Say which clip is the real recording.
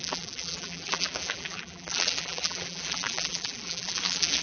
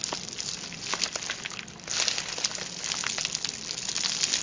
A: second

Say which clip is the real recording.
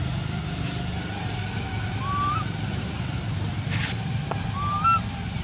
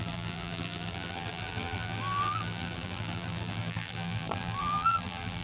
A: first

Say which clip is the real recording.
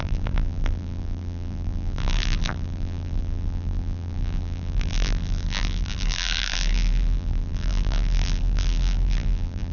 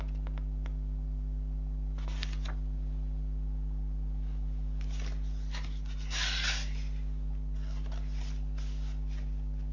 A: second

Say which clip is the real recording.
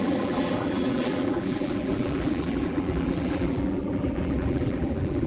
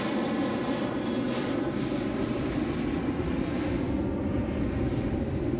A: second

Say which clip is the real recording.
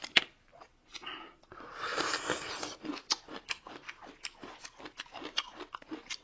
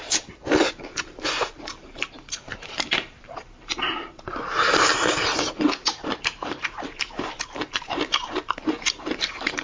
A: first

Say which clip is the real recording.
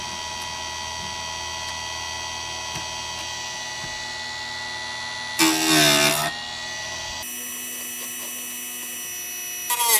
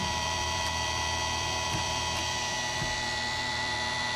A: first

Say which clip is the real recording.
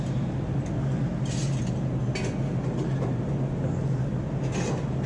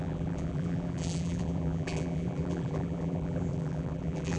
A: first